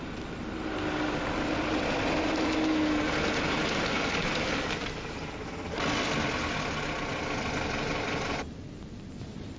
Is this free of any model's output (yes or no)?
yes